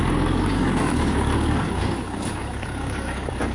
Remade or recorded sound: remade